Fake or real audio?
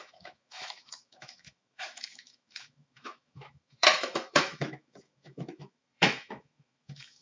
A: fake